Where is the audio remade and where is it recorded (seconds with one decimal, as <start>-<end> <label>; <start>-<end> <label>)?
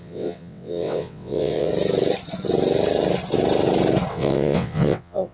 0.0-1.7 remade; 1.7-4.1 recorded; 4.1-5.3 remade